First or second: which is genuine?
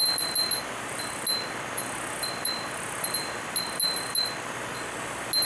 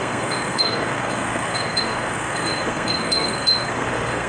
first